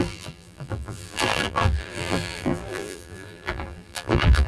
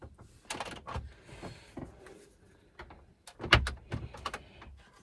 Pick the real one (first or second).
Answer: second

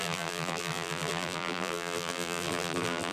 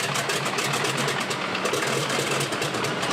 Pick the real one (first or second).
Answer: second